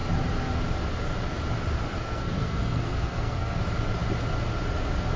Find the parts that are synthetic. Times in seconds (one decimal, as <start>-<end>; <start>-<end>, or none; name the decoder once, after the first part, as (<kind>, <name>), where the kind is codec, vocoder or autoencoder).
1.9-3.6 (codec, SNAC)